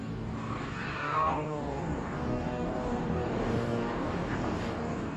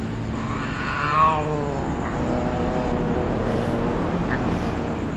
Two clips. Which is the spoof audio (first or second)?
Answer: first